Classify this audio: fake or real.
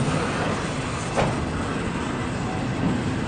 real